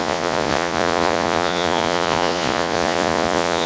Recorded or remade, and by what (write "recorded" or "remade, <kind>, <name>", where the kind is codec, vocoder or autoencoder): remade, vocoder, Vocos